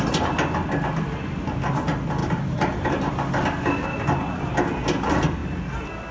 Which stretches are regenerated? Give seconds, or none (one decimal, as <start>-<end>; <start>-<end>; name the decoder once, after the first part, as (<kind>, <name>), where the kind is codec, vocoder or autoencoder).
2.2-3.1 (vocoder, BigVGAN v2)